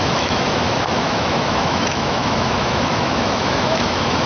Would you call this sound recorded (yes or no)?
no